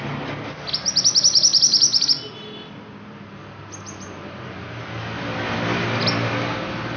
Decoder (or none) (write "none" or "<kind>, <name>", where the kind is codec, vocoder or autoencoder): none